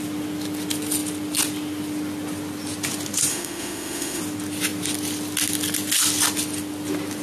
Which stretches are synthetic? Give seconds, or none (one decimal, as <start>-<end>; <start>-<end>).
3.3-4.2